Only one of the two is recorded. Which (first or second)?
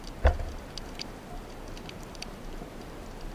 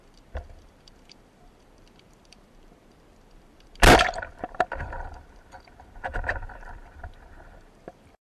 first